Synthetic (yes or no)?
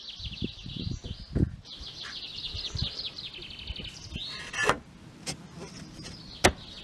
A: no